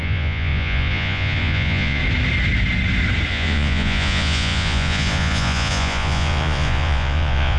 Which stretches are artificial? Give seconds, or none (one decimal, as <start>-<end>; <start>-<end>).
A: 0.0-2.0; 3.3-7.6

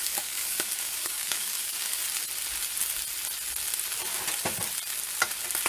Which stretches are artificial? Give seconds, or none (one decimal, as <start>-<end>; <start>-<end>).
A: 0.0-2.0

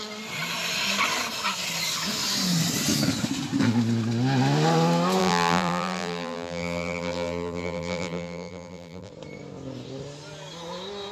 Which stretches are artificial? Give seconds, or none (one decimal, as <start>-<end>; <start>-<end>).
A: 5.2-9.1

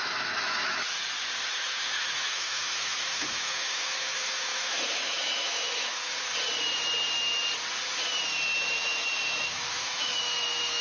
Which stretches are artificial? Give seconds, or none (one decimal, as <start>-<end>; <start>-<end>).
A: 0.0-0.9; 1.5-6.3; 9.4-10.8

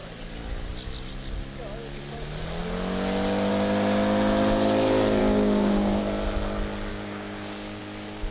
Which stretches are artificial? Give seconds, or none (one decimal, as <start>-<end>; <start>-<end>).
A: 5.2-6.0; 6.9-7.8